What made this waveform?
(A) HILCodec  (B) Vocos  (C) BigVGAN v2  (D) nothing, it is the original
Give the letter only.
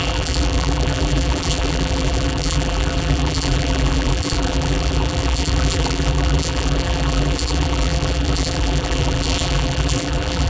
C